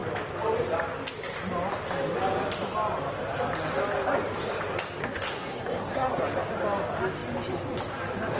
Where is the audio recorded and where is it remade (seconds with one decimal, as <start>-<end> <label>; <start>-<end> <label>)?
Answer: 0.0-5.0 recorded; 5.0-6.2 remade; 6.2-8.4 recorded